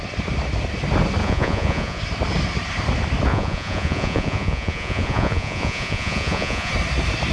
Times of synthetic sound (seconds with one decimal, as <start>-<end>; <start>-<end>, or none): 1.2-2.0; 3.3-6.7